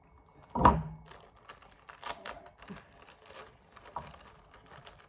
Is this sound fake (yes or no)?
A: no